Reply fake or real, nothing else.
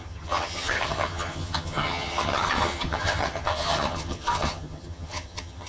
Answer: fake